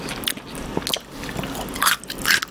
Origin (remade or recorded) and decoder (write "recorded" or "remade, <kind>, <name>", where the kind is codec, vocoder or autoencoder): recorded